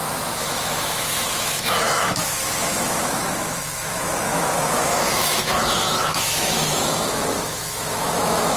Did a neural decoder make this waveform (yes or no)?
yes